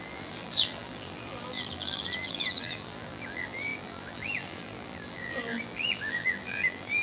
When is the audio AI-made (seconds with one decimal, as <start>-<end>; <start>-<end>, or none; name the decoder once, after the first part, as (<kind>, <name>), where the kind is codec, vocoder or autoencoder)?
0.0-7.0 (vocoder, BigVGAN v2)